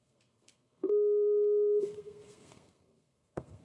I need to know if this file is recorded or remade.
remade